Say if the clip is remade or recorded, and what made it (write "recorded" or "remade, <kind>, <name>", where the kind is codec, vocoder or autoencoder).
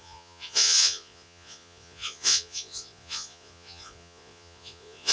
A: remade, vocoder, Vocos